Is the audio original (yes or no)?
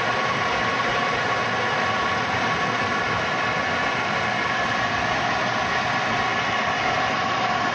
yes